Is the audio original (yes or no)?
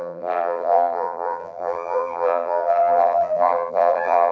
no